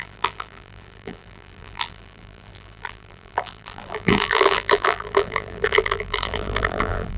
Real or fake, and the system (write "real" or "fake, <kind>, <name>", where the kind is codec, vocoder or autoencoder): fake, vocoder, BigVGAN v2